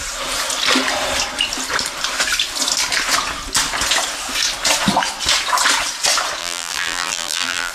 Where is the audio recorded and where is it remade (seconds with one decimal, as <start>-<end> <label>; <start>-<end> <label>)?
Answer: 0.0-6.4 recorded; 6.4-7.7 remade

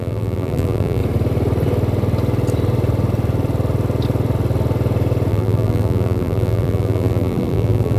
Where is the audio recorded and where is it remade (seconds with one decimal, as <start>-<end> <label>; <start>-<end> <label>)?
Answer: 0.0-1.0 remade; 1.0-5.3 recorded; 5.3-8.0 remade

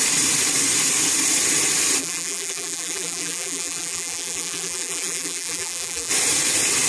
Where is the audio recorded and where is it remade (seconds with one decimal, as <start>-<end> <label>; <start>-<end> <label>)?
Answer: 0.0-2.0 recorded; 2.0-6.1 remade; 6.1-6.9 recorded